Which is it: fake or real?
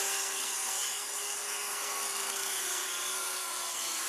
fake